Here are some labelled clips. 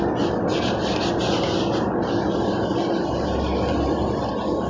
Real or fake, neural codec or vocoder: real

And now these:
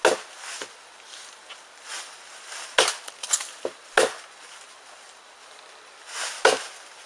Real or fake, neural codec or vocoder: real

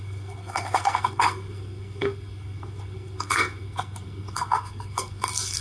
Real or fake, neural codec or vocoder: fake, codec, SNAC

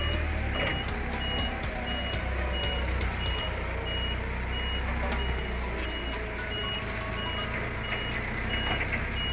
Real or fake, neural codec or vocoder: real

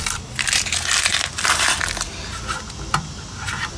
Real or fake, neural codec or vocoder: real